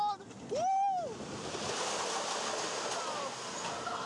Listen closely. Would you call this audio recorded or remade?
recorded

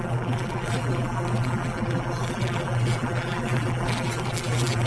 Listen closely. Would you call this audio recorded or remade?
remade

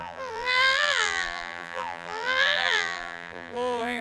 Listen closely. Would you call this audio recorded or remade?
remade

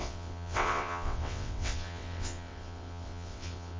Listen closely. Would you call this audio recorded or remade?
remade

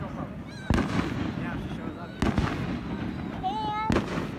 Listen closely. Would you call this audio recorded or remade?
recorded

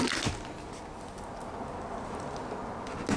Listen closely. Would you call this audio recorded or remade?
recorded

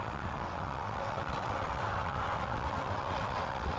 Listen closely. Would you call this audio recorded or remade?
remade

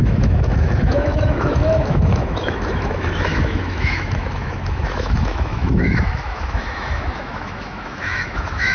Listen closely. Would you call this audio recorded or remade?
remade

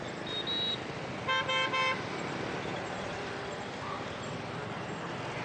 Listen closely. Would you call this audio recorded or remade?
recorded